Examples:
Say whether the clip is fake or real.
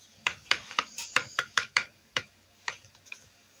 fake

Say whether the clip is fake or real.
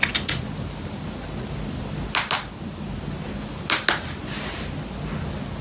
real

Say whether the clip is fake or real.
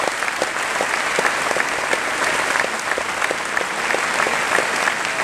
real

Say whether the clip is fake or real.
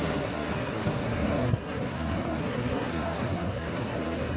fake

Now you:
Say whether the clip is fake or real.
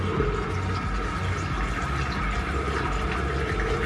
real